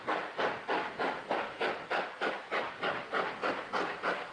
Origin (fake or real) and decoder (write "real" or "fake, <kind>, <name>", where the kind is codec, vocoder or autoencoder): real